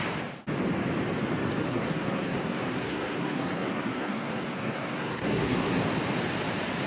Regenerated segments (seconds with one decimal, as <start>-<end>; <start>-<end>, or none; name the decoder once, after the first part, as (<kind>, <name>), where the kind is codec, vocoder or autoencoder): 1.7-5.8 (codec, SNAC)